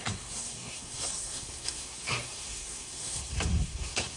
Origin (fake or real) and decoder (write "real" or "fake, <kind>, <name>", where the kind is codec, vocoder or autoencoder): fake, codec, SNAC